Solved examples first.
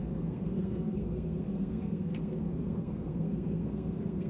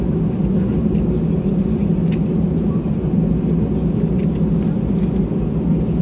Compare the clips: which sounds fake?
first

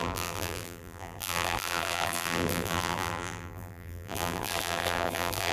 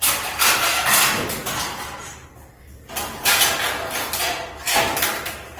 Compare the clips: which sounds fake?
first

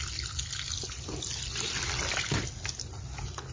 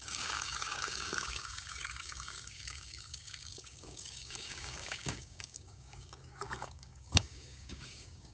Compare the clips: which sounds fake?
second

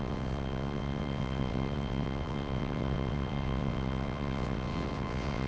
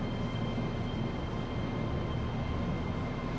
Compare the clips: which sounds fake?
first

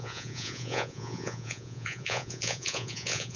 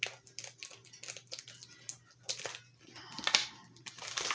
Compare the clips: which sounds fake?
first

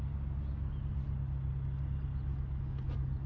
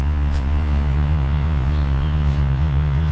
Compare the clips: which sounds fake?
second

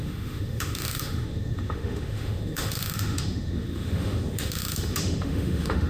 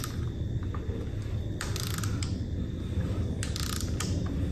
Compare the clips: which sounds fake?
first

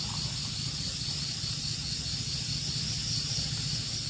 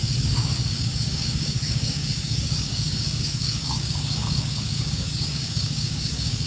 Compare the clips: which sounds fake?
second